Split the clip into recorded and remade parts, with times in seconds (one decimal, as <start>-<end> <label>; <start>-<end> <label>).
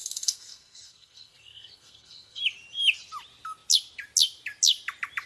0.0-2.4 remade; 2.4-5.3 recorded